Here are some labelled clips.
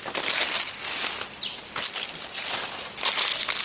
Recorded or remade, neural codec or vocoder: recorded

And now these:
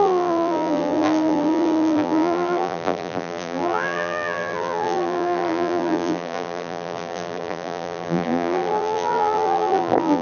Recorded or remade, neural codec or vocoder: remade, vocoder, BigVGAN v2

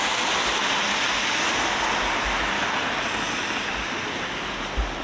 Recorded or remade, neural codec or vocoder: recorded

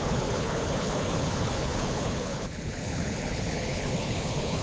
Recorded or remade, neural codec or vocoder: remade, codec, HILCodec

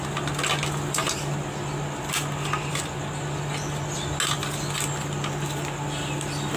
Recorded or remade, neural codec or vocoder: recorded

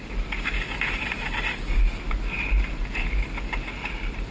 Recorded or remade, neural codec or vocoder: recorded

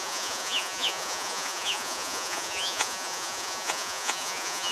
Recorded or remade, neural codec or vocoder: remade, vocoder, Vocos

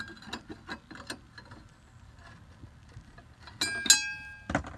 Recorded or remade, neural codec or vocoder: recorded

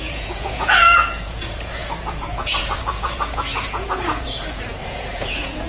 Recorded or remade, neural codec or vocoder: remade, vocoder, Vocos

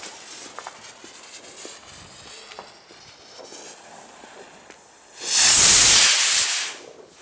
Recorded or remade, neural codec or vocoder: recorded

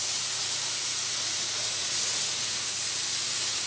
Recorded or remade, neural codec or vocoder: remade, vocoder, Vocos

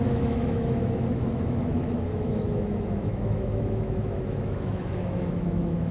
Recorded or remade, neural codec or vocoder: remade, autoencoder, DAC-VAE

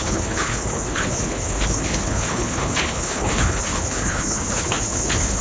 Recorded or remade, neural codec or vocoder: remade, codec, HILCodec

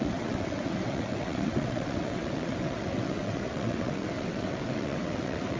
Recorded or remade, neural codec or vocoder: remade, vocoder, WaveNeXt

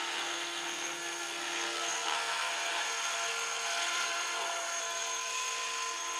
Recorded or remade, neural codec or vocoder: remade, codec, SNAC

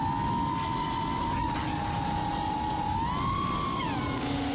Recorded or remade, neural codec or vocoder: recorded